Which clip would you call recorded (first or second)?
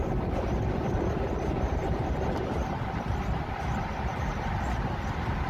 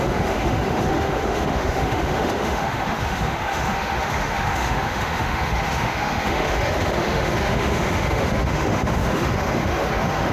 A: first